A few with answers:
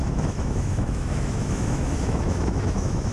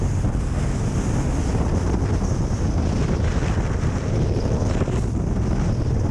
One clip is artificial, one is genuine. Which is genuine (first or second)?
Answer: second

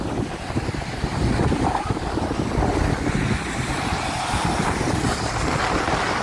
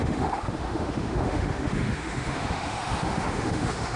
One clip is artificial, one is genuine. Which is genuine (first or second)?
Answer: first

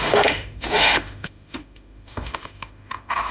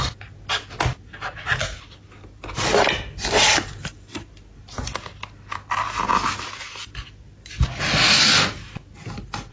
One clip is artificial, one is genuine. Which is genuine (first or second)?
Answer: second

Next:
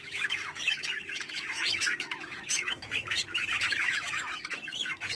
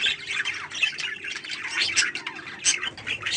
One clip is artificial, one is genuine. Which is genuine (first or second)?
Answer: second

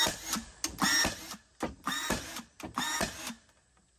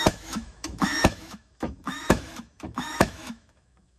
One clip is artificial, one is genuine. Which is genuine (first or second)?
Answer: first